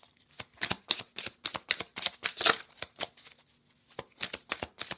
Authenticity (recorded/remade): recorded